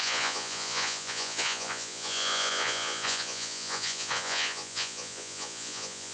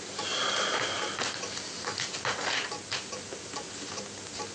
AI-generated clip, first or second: first